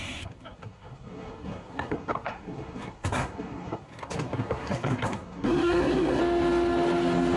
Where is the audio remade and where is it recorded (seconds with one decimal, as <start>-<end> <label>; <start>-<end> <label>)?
0.0-6.2 remade; 6.2-7.4 recorded